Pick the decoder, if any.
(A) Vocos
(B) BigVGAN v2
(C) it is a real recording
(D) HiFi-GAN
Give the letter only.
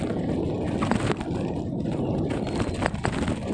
C